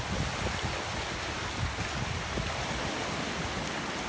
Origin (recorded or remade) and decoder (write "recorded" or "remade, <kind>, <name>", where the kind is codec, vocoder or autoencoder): recorded